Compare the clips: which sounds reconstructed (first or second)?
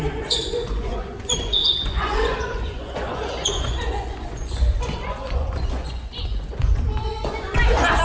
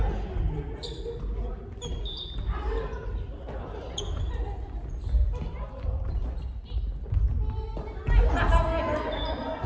first